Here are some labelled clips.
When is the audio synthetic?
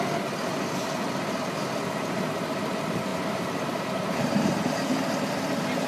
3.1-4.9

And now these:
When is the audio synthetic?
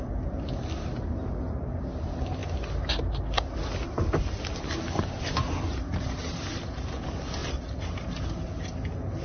7.4-8.1